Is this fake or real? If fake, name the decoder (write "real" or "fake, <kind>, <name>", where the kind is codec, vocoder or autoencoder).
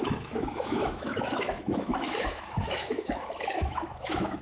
fake, autoencoder, DAC-VAE